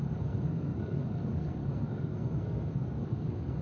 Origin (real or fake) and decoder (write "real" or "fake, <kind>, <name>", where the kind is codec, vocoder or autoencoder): fake, codec, SNAC